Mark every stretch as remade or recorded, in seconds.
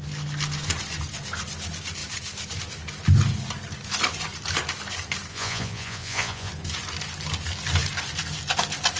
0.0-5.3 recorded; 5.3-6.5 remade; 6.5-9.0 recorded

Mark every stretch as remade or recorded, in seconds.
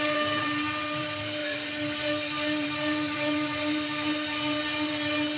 0.0-5.4 remade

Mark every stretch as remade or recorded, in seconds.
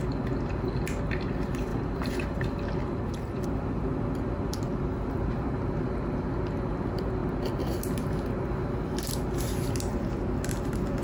0.0-1.7 recorded; 1.7-5.7 remade; 5.7-11.0 recorded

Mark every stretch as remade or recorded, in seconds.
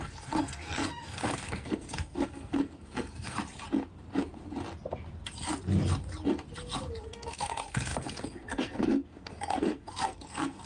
0.0-3.4 remade; 3.4-7.0 recorded; 7.0-10.7 remade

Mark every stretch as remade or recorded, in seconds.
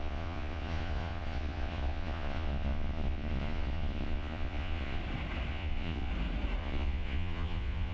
0.0-5.0 remade; 5.0-5.5 recorded; 5.5-6.1 remade; 6.1-6.6 recorded; 6.6-7.9 remade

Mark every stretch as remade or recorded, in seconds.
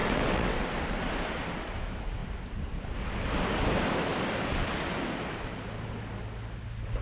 0.0-0.6 remade; 0.6-7.0 recorded